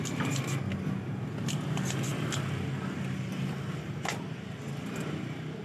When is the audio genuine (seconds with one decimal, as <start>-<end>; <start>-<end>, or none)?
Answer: 0.0-5.6